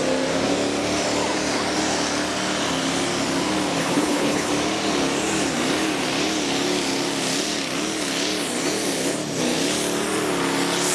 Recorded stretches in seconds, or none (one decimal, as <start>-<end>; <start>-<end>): 0.0-3.8; 4.5-10.9